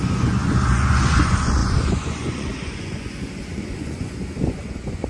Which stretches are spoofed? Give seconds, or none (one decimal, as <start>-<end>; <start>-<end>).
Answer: 0.0-5.1